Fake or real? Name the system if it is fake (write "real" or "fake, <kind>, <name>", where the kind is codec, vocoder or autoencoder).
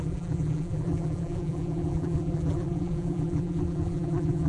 fake, vocoder, BigVGAN v2